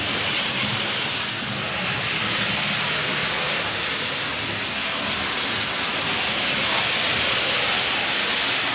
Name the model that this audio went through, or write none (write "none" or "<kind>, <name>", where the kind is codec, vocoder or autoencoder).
none